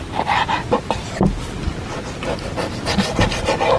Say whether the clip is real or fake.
real